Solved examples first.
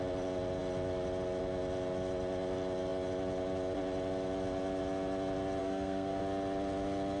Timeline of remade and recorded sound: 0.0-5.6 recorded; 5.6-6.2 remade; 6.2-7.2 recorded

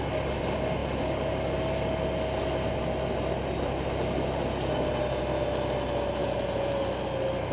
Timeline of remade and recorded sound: 0.0-6.2 recorded; 6.2-6.8 remade; 6.8-7.5 recorded